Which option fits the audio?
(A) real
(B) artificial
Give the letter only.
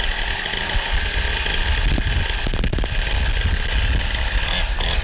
A